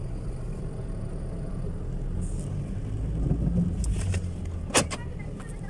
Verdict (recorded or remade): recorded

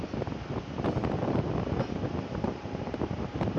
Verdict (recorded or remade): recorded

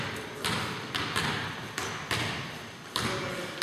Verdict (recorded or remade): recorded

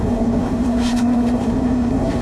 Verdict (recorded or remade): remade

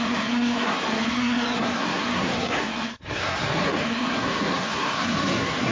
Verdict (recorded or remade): remade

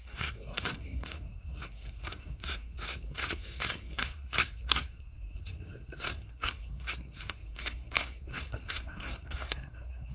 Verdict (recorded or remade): remade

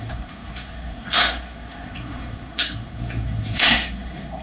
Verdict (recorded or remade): remade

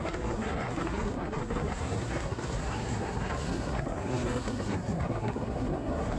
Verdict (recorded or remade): remade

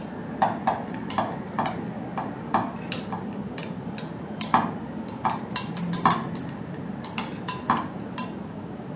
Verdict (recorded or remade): recorded